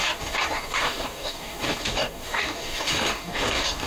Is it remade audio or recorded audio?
remade